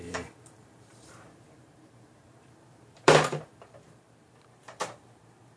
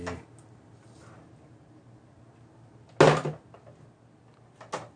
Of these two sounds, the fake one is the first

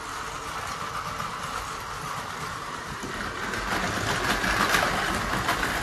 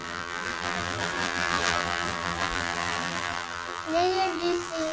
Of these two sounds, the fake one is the second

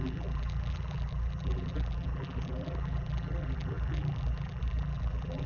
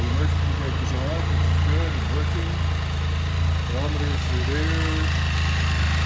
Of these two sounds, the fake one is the first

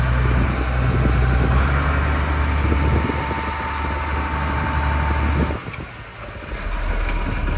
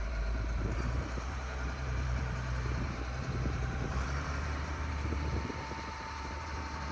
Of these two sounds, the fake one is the second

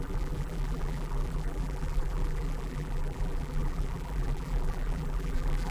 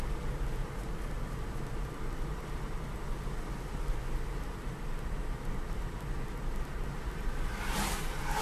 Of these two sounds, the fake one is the first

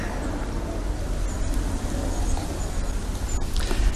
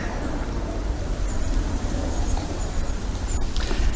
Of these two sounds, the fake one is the second